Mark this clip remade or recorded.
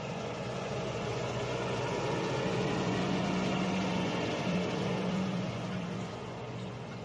remade